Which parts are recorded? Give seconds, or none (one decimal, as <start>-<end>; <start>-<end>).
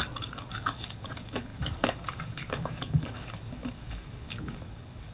none